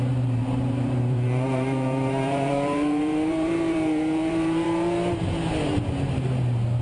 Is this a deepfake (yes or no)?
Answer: yes